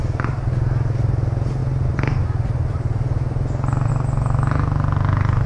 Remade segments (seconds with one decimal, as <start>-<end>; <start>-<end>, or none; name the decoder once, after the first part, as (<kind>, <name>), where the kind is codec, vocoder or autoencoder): none